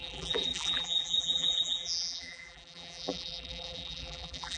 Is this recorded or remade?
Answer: remade